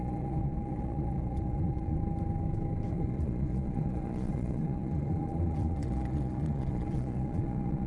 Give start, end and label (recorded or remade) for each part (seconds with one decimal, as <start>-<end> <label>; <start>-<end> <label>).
0.0-2.0 remade; 2.0-2.9 recorded; 2.9-7.9 remade